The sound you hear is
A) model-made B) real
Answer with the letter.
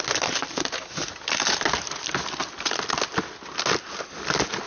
B